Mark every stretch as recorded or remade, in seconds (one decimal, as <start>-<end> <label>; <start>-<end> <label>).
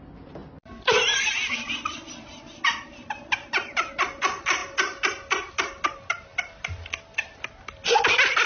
0.0-8.5 recorded